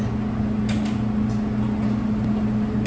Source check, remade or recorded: recorded